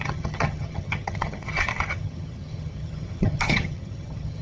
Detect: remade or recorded remade